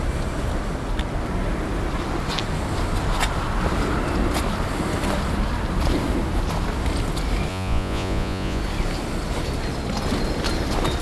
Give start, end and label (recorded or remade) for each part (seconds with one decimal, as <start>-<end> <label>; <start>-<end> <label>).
0.0-7.5 recorded; 7.5-8.6 remade; 8.6-11.0 recorded